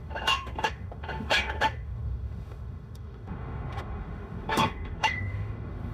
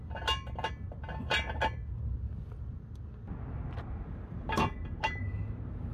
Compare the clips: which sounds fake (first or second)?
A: first